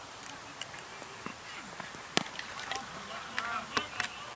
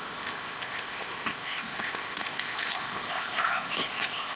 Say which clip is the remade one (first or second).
second